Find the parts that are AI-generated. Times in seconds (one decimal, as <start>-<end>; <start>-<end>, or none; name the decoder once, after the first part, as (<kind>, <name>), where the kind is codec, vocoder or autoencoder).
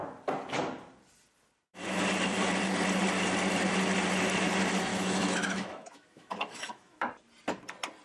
4.9-7.1 (autoencoder, DAC-VAE)